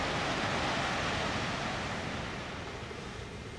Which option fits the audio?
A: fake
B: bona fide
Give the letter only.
B